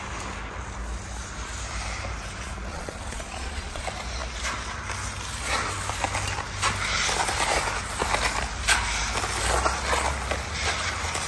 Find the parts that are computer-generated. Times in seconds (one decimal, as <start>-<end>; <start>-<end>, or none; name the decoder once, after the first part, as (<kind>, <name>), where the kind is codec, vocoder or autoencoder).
2.7-3.8 (vocoder, Vocos)

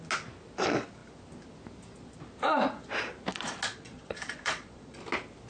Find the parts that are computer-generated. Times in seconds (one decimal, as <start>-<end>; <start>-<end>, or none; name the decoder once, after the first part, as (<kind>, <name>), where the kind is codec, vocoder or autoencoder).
3.7-5.0 (vocoder, Vocos)

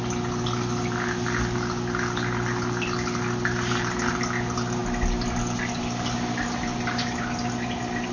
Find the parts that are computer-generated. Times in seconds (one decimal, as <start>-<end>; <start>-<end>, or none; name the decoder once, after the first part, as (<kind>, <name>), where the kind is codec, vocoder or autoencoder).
none

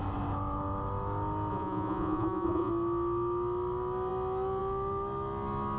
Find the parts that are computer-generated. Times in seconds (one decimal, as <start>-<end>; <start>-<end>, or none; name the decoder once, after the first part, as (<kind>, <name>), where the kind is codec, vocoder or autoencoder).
1.5-2.7 (vocoder, Vocos)

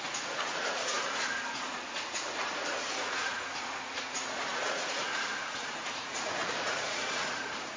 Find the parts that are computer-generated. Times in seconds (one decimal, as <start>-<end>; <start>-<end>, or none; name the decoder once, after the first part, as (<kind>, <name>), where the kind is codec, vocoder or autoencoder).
0.0-7.8 (vocoder, Vocos)